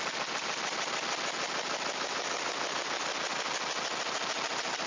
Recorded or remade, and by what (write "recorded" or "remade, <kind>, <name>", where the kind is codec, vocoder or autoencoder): recorded